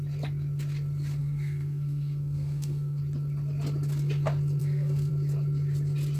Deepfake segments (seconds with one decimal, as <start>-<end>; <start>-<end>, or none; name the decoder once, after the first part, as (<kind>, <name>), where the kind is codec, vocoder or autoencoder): 1.2-3.0 (codec, SNAC); 4.6-5.1